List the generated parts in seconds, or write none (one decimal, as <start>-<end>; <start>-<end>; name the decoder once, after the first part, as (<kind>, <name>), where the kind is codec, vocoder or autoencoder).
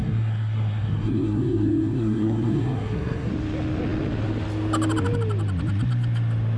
0.0-3.3 (codec, SNAC)